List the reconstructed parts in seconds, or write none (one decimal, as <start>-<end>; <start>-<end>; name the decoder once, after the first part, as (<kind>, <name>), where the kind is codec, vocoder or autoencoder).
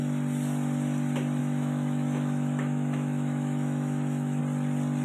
1.4-4.4 (autoencoder, DAC-VAE)